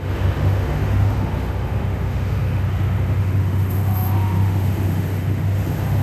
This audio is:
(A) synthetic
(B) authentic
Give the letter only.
A